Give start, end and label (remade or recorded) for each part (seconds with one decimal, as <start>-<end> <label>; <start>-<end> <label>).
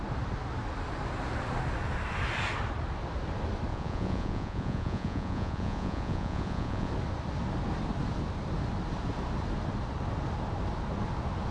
0.0-3.7 recorded; 3.7-6.9 remade; 6.9-11.5 recorded